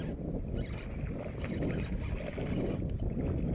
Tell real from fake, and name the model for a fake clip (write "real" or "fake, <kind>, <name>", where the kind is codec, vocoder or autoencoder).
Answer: real